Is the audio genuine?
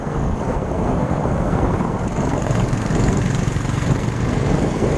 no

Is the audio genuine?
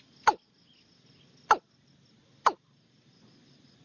yes